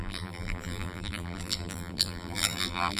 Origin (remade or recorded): remade